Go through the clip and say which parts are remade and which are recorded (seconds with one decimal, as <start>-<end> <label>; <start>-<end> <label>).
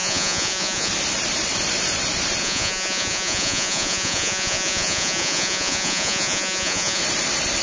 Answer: 0.0-0.9 remade; 0.9-2.4 recorded; 2.4-7.0 remade; 7.0-7.6 recorded